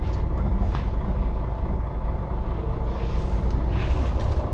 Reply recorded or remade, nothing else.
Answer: recorded